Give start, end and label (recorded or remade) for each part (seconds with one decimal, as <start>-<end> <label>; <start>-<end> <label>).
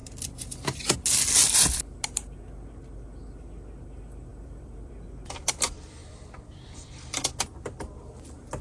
0.0-0.8 remade; 0.8-4.3 recorded; 4.3-4.9 remade; 4.9-6.0 recorded; 6.0-7.1 remade; 7.1-8.6 recorded